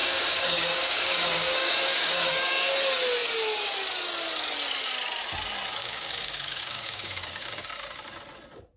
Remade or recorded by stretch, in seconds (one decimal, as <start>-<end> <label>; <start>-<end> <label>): 0.0-2.7 remade; 2.7-5.8 recorded; 5.8-7.8 remade; 7.8-8.8 recorded